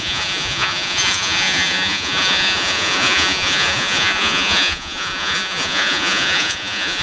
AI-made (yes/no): yes